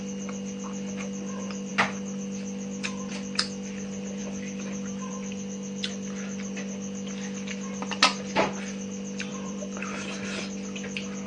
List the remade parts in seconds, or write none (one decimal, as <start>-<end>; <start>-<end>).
4.2-5.1; 9.3-10.4